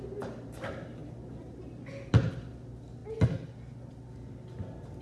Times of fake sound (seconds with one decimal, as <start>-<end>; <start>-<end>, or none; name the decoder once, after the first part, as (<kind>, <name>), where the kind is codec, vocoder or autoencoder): none